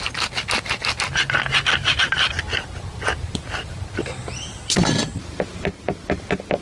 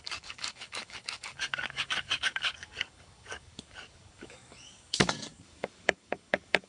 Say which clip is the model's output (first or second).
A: second